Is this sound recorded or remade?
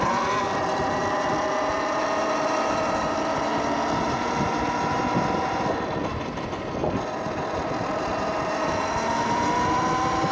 remade